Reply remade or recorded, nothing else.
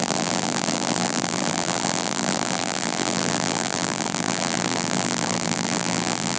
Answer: remade